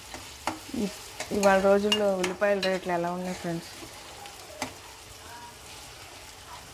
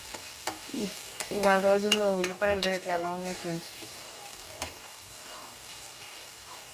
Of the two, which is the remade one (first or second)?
second